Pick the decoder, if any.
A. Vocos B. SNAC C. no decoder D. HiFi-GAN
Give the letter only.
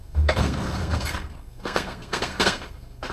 B